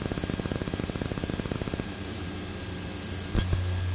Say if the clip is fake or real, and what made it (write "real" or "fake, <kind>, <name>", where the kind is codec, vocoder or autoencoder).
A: real